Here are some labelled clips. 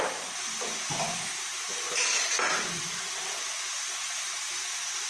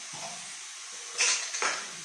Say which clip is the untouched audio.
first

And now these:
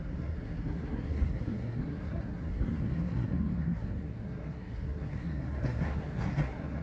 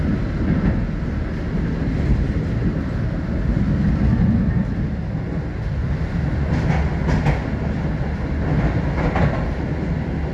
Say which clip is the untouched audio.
second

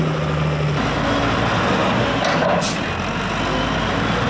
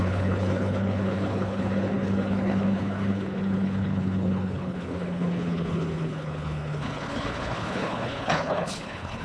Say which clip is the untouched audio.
first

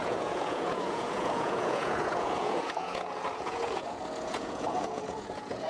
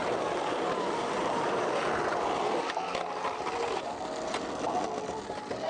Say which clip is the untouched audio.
second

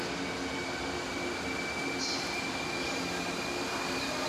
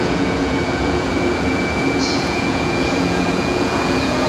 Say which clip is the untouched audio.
first